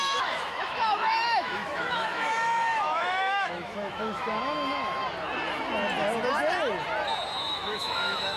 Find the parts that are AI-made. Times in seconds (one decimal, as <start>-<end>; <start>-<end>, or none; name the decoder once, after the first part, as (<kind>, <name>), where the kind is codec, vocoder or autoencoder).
0.0-5.0 (autoencoder, DAC-VAE); 7.4-8.4